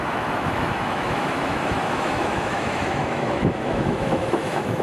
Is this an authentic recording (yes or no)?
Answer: no